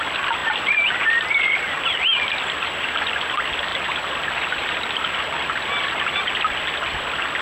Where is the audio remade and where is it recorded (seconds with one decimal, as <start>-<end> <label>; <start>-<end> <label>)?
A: 0.0-7.4 recorded